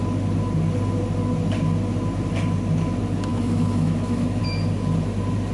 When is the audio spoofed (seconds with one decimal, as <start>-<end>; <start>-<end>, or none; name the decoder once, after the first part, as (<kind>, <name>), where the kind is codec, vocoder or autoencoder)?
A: 3.3-4.4 (autoencoder, DAC-VAE)